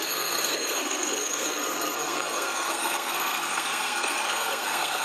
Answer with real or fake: fake